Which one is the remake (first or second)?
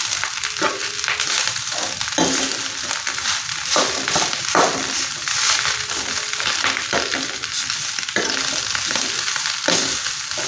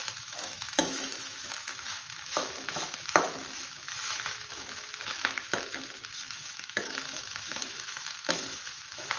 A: second